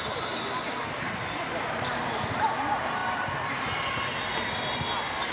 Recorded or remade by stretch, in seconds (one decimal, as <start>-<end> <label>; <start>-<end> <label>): 0.0-5.3 recorded